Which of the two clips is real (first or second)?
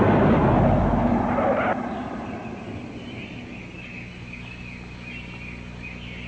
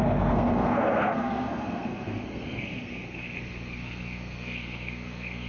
first